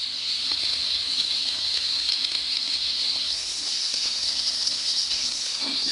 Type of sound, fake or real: fake